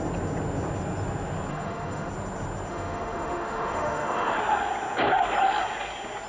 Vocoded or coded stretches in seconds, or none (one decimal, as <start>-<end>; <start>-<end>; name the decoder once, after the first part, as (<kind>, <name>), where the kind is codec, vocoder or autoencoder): 1.5-2.1 (autoencoder, DAC-VAE); 2.7-4.4